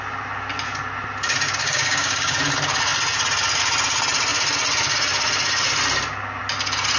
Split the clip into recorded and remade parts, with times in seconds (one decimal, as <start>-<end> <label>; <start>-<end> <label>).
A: 0.0-1.6 recorded; 1.6-2.4 remade; 2.4-7.0 recorded